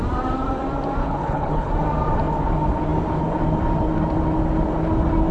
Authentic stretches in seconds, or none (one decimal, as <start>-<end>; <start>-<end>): 0.0-1.0; 1.7-5.3